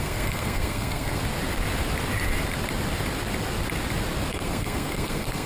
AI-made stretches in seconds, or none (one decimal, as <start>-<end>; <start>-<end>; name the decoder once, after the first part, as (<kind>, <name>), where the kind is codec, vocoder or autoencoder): 0.0-1.2 (codec, SNAC); 4.3-5.5